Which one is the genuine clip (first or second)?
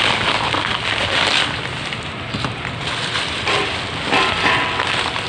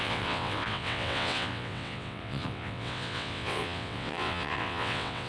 first